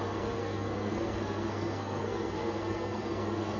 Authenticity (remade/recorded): remade